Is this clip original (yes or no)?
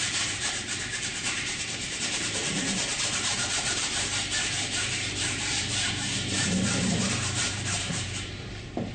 no